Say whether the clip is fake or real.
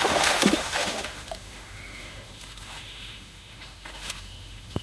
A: fake